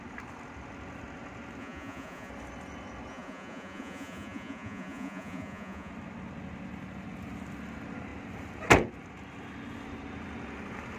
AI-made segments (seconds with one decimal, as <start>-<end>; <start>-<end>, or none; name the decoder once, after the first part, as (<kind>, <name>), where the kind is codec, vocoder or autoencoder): 1.6-2.3 (vocoder, Vocos); 3.1-5.9